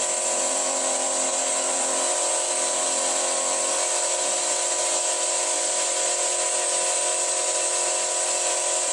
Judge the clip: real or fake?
real